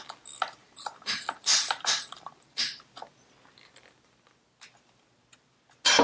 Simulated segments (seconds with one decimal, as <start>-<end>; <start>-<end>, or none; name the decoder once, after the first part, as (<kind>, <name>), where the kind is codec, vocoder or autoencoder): 0.6-2.9 (vocoder, BigVGAN v2)